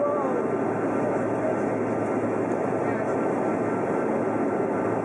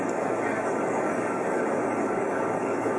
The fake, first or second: second